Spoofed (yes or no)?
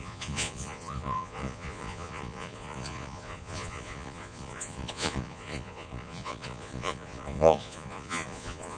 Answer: yes